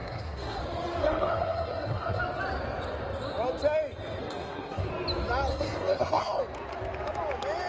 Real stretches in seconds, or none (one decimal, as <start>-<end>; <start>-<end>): 0.6-1.0; 2.2-4.2; 4.9-5.5; 6.4-7.7